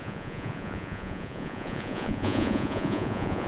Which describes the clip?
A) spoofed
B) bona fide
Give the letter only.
A